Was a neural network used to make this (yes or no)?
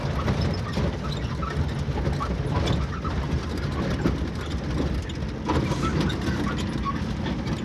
no